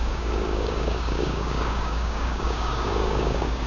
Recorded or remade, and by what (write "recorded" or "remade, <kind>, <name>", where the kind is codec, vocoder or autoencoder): remade, codec, DAC